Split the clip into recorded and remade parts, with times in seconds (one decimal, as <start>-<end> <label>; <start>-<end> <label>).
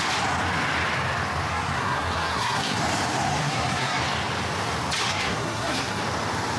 0.0-1.5 recorded; 1.5-2.8 remade; 2.8-3.4 recorded; 3.4-4.0 remade; 4.0-5.1 recorded; 5.1-6.0 remade; 6.0-6.6 recorded